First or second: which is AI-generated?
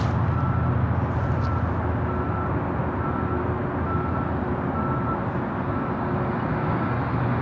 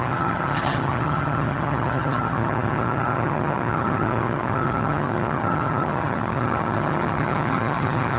second